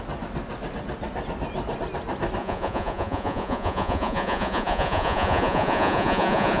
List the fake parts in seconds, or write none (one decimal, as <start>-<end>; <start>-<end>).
2.4-6.6